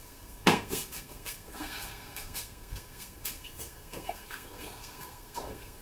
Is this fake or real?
fake